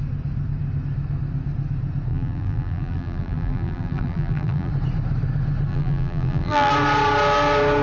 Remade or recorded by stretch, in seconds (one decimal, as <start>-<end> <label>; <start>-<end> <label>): 0.0-2.1 recorded; 2.1-4.7 remade; 4.7-5.7 recorded; 5.7-6.7 remade; 6.7-7.8 recorded